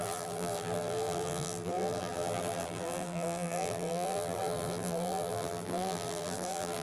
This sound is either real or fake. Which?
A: fake